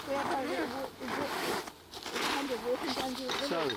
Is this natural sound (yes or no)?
yes